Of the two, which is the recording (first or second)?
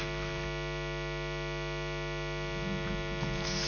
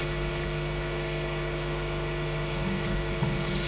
first